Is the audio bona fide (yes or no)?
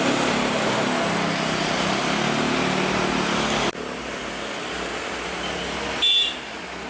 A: yes